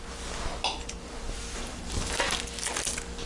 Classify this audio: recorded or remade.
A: recorded